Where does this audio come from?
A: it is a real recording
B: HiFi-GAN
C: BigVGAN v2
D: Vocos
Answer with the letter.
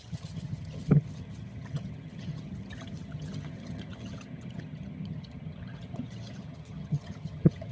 B